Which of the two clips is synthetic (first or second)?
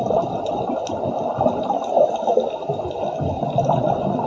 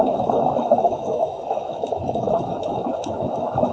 second